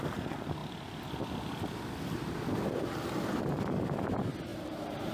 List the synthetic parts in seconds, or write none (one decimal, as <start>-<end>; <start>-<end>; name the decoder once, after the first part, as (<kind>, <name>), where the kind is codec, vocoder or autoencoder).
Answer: 4.5-5.1 (vocoder, BigVGAN v2)